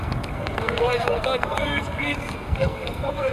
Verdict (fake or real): fake